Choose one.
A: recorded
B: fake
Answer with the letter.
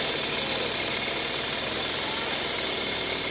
A